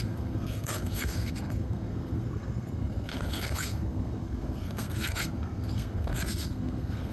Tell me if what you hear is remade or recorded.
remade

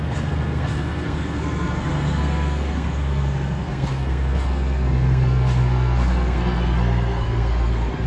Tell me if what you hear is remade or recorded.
remade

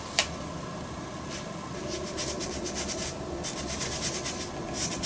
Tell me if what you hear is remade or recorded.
recorded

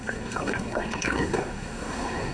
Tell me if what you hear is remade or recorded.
remade